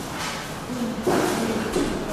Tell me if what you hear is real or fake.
real